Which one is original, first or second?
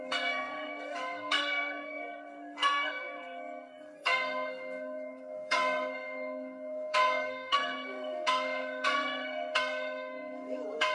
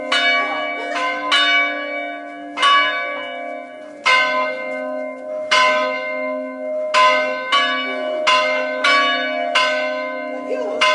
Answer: second